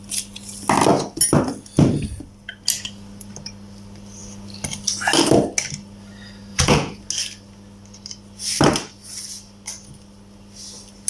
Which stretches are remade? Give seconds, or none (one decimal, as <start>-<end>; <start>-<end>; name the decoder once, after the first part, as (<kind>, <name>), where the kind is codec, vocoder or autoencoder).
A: 6.5-7.0 (vocoder, Vocos)